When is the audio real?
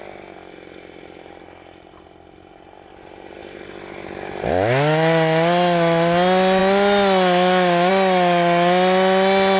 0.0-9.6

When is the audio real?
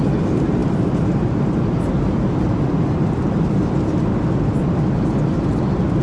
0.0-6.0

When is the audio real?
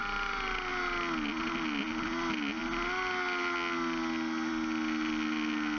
0.0-5.8